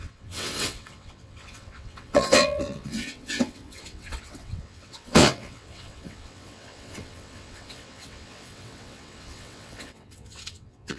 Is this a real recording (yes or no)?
no